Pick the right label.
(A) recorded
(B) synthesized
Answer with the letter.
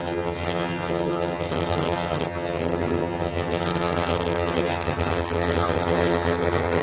B